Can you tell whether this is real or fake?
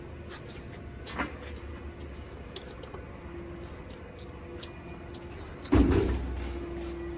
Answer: real